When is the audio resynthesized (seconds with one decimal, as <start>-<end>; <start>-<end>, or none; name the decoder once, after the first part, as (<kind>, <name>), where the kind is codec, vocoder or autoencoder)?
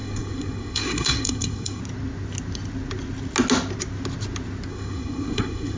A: 0.0-1.8 (codec, SNAC); 4.7-5.8